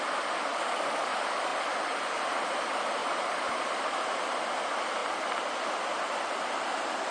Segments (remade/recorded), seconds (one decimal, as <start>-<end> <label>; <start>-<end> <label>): 0.0-0.5 recorded; 0.5-1.1 remade; 1.1-7.1 recorded

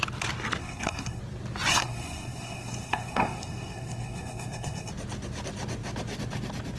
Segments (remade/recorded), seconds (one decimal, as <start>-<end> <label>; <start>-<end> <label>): 0.0-0.6 recorded; 0.6-1.2 remade; 1.2-1.7 recorded; 1.7-4.9 remade; 4.9-6.8 recorded

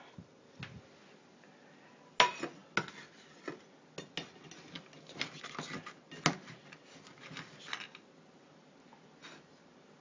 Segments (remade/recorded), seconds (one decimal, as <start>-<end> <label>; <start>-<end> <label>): 0.0-10.0 recorded

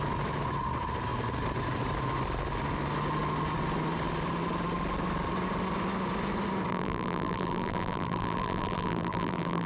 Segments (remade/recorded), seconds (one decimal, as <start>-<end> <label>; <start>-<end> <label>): 0.0-6.7 recorded; 6.7-9.7 remade

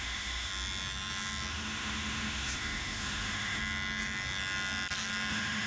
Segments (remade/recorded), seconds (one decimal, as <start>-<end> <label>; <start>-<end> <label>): 0.0-0.5 remade; 0.5-1.5 recorded; 1.5-3.6 remade; 3.6-5.3 recorded; 5.3-5.7 remade

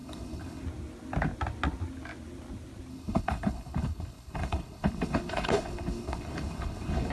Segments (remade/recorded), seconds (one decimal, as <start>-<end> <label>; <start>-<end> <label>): 0.0-0.6 remade; 0.6-2.9 recorded; 2.9-7.1 remade

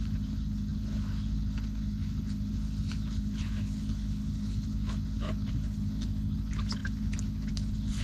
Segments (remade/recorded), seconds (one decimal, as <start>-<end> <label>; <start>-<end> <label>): 0.0-8.0 remade